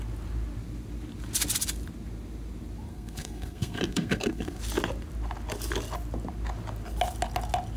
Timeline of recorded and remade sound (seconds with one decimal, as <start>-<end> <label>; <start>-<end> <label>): 0.0-2.9 recorded; 2.9-4.6 remade; 4.6-7.8 recorded